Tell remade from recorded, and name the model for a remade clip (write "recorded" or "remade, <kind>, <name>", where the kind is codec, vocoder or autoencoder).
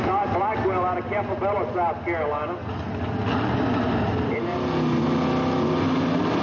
recorded